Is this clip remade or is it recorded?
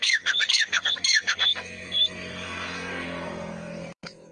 remade